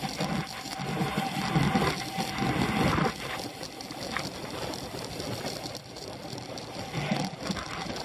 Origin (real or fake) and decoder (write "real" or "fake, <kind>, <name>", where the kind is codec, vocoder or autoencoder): real